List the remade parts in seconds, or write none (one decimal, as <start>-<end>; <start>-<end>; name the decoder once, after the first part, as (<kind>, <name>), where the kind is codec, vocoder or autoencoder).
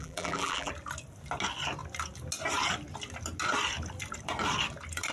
0.0-0.7 (vocoder, BigVGAN v2)